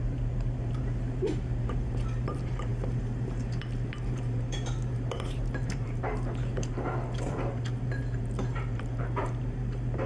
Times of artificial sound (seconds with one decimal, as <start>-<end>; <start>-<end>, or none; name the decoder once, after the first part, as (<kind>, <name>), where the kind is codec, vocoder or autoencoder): 0.0-10.1 (vocoder, BigVGAN v2)